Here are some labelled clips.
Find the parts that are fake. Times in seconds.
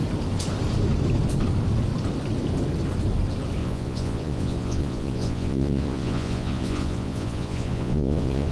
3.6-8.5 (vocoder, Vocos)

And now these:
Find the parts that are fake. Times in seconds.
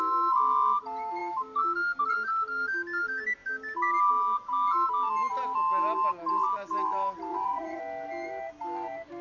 7.3-7.8 (vocoder, Vocos)